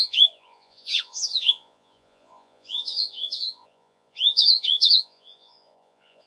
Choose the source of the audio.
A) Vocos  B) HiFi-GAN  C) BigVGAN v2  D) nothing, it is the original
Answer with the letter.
A